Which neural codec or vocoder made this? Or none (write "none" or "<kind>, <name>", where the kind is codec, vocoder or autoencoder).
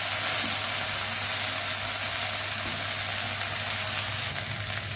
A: none